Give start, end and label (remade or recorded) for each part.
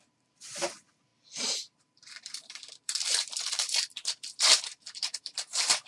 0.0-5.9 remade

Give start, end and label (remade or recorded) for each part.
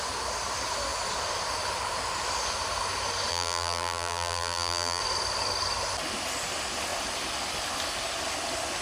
0.0-3.3 recorded; 3.3-5.0 remade; 5.0-8.8 recorded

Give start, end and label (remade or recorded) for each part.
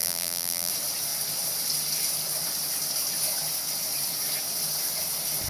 0.0-0.7 remade; 0.7-5.5 recorded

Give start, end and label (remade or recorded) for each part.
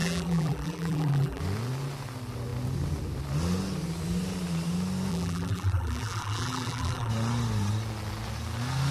0.0-1.4 remade; 1.4-5.1 recorded; 5.1-7.1 remade; 7.1-8.9 recorded